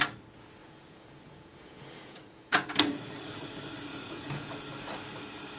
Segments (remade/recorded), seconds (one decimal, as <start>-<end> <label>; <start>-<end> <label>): 0.0-0.6 recorded; 0.6-2.7 remade; 2.7-3.9 recorded; 3.9-4.5 remade; 4.5-5.6 recorded